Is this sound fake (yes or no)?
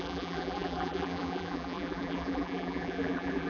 yes